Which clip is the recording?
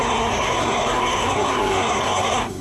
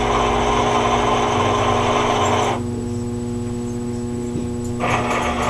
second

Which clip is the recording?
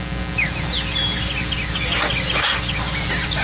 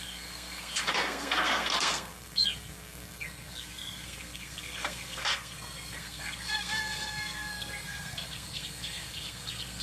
first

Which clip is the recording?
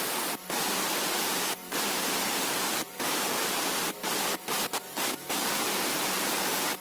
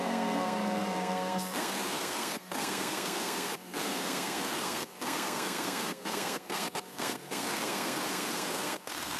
first